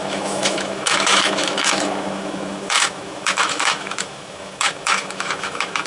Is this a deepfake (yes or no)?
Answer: yes